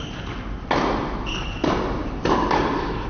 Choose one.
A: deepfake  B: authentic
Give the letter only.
B